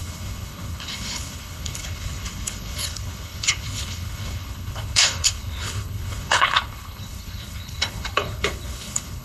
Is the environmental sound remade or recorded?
remade